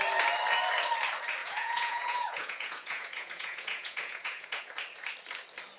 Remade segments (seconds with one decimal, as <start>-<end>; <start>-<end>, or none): 1.4-4.7